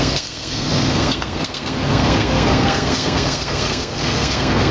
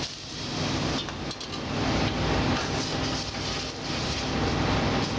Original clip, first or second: second